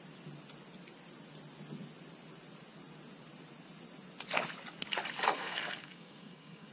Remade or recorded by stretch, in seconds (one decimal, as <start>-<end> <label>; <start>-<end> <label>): 0.0-5.3 recorded; 5.3-6.7 remade